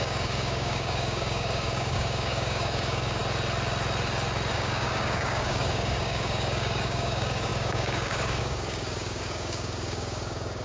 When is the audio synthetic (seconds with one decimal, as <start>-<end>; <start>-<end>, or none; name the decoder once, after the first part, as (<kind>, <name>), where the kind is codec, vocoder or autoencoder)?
0.0-3.2 (codec, DAC); 4.5-10.6